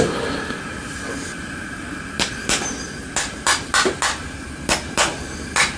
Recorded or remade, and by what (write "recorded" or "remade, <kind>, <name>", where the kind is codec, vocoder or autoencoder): recorded